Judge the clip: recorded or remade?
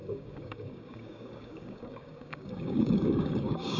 remade